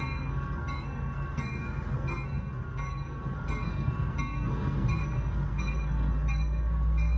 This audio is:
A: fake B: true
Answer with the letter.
A